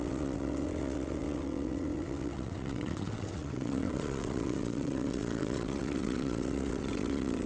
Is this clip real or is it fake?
fake